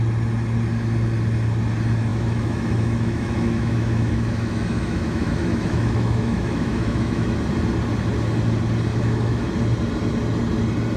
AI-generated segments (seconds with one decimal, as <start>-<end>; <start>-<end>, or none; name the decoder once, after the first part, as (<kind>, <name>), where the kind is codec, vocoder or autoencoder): 2.1-7.4 (autoencoder, DAC-VAE); 8.9-9.5

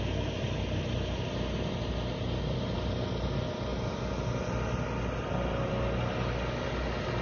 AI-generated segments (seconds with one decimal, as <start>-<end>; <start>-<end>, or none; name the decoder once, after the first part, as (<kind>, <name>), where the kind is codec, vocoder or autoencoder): none